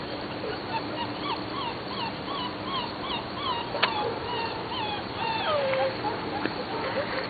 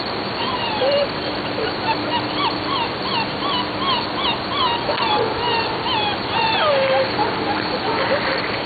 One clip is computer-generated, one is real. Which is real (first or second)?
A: second